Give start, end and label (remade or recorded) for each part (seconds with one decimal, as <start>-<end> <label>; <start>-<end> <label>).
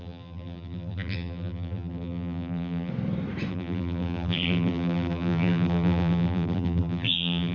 0.0-2.9 remade; 2.9-3.5 recorded; 3.5-7.5 remade